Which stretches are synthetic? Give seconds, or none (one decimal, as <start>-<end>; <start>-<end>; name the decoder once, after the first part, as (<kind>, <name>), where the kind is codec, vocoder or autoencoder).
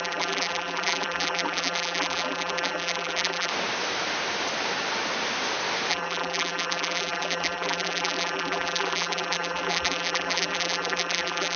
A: 0.0-3.5 (vocoder, BigVGAN v2); 5.9-11.6